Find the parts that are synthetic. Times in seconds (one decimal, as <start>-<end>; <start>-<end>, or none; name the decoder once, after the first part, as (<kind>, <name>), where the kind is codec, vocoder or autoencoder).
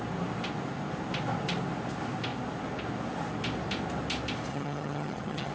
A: 4.5-5.5 (vocoder, HiFi-GAN)